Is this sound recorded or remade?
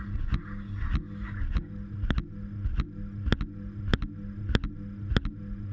recorded